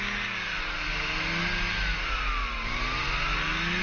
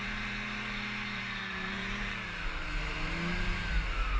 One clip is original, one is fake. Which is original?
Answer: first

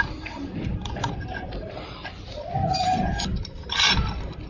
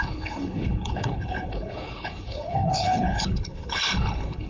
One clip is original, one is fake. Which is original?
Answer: first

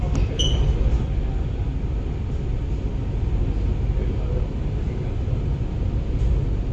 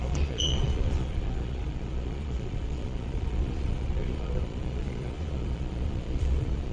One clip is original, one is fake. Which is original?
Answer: first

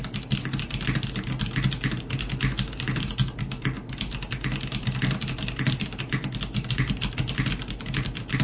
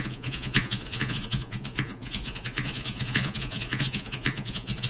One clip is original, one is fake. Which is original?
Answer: first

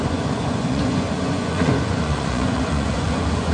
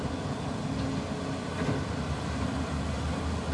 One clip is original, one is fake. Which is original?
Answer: second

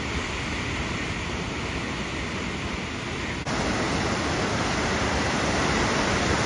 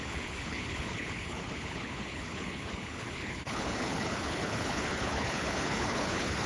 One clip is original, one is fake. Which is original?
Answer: first